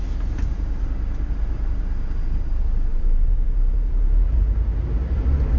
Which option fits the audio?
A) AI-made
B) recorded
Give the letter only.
A